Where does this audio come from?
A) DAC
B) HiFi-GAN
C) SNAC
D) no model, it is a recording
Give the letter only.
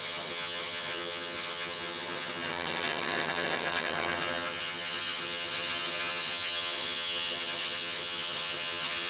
B